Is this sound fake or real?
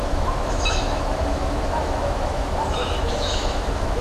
fake